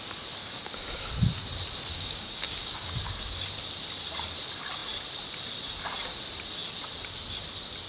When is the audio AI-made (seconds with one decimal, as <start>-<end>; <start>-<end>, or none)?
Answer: 0.4-1.1; 1.9-3.4